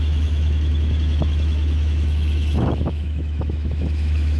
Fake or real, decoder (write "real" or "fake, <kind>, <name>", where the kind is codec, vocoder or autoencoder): fake, autoencoder, DAC-VAE